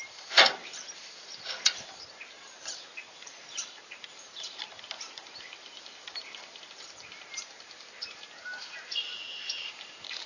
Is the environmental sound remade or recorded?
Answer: remade